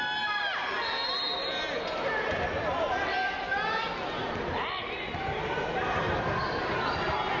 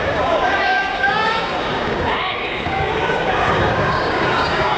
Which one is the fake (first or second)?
second